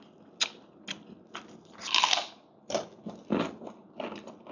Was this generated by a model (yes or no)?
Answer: no